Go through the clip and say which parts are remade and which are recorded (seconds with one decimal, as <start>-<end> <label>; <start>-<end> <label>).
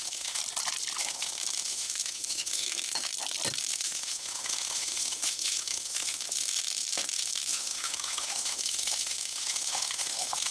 0.0-0.4 remade; 0.4-1.0 recorded; 1.0-3.1 remade; 3.1-3.6 recorded; 3.6-10.5 remade